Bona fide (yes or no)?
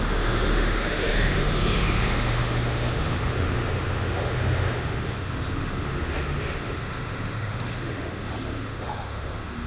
no